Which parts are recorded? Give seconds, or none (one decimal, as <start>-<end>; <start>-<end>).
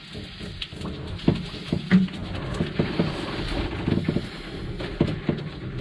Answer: 0.0-5.8